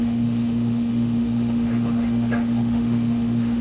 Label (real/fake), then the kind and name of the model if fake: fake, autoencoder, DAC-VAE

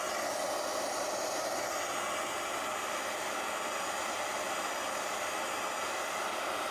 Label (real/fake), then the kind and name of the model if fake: real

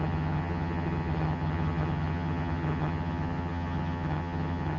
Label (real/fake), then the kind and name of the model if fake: fake, vocoder, HiFi-GAN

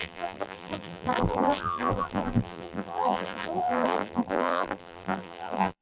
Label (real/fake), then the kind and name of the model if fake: fake, vocoder, BigVGAN v2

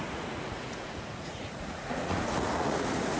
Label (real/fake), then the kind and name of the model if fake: fake, vocoder, Vocos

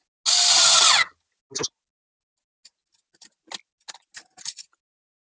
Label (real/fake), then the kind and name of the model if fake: real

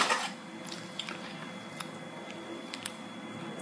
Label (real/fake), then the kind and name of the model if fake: real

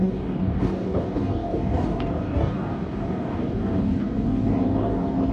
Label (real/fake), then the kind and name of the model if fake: fake, codec, DAC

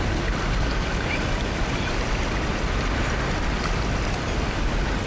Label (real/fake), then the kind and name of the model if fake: real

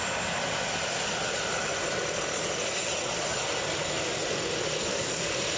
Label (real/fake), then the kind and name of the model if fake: real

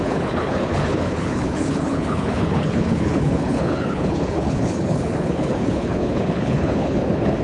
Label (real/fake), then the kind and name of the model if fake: fake, codec, HILCodec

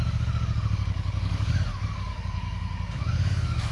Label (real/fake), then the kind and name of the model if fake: fake, codec, DAC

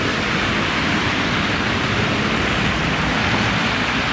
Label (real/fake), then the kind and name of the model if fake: fake, vocoder, BigVGAN v2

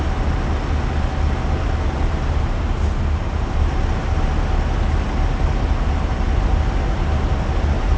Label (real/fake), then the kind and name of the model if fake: real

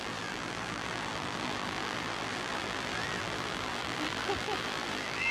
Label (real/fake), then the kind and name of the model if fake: fake, vocoder, BigVGAN v2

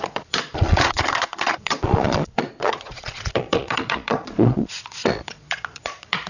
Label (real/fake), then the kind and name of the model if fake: fake, vocoder, Vocos